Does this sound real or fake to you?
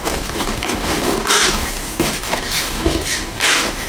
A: fake